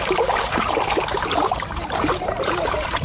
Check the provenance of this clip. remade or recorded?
remade